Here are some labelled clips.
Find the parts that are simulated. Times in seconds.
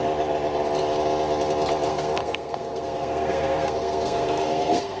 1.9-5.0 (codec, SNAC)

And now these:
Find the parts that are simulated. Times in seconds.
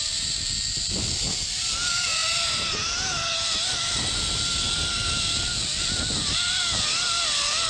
none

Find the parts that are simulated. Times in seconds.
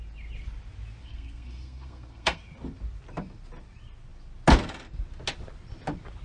1.0-2.4 (codec, SNAC)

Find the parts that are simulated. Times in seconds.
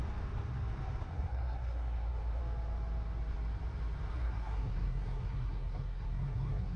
1.1-2.4 (codec, SNAC); 4.1-6.8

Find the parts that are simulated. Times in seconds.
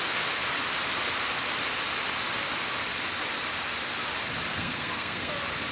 4.5-5.3 (codec, SNAC)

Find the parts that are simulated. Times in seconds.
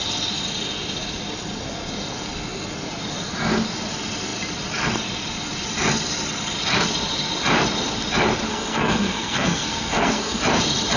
8.5-10.4 (codec, SNAC)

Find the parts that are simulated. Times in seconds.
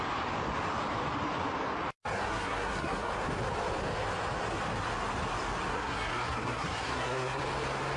2.1-3.1 (codec, SNAC); 5.7-7.4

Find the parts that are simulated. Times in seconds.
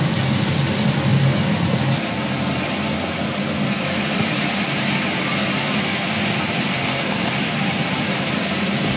6.7-7.3 (codec, SNAC)